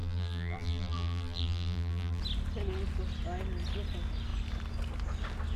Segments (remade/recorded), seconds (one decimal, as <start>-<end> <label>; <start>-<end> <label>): 0.0-2.2 remade; 2.2-5.6 recorded